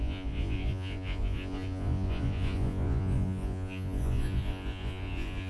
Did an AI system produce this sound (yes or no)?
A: yes